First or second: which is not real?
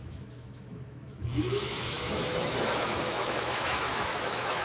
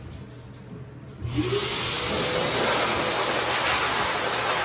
first